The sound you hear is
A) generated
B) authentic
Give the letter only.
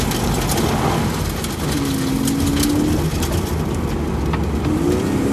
B